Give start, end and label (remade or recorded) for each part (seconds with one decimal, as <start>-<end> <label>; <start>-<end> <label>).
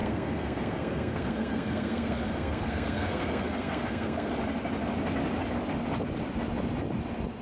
0.0-4.3 remade; 4.3-7.4 recorded